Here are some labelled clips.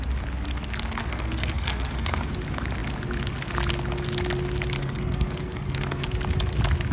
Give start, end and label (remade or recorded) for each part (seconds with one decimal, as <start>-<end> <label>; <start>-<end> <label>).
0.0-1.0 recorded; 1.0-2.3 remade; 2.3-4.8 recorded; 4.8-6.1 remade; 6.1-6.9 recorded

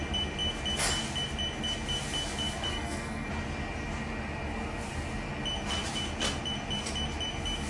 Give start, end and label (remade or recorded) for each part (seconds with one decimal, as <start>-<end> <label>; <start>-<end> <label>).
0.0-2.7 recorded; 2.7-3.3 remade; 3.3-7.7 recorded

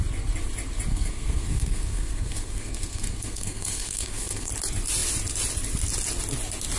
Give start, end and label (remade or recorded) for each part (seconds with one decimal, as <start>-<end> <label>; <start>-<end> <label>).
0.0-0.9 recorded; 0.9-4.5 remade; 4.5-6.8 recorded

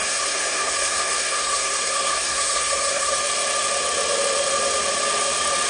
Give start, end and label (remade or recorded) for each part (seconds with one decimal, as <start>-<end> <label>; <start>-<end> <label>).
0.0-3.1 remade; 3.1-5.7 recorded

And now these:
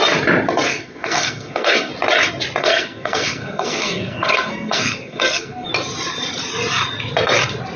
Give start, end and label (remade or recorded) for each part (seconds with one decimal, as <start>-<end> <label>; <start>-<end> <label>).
0.0-0.7 recorded; 0.7-1.9 remade; 1.9-2.6 recorded; 2.6-5.7 remade; 5.7-7.8 recorded

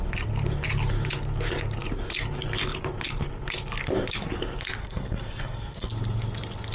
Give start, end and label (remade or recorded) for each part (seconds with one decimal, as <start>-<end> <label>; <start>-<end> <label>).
0.0-4.8 recorded; 4.8-5.9 remade; 5.9-6.7 recorded